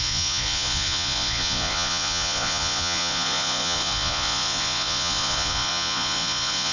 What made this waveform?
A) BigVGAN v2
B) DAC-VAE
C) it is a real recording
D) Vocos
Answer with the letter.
D